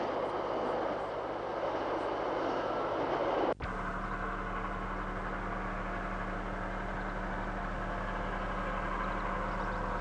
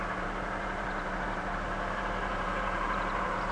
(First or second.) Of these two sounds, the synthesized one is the second